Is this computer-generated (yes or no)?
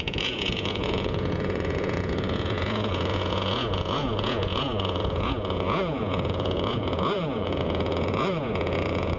yes